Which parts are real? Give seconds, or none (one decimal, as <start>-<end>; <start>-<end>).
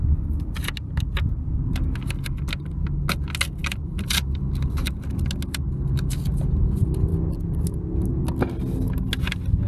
0.0-3.6; 5.2-9.7